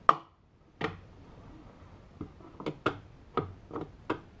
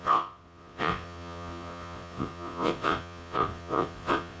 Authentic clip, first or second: first